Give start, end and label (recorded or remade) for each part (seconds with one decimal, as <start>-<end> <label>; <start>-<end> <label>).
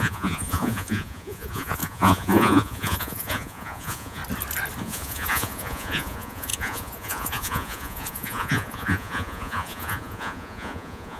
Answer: 0.0-4.2 remade; 4.2-4.8 recorded; 4.8-11.2 remade